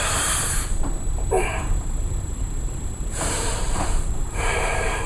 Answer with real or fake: fake